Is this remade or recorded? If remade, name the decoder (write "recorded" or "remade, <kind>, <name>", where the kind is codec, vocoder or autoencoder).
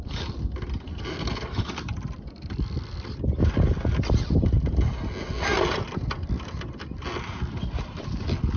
recorded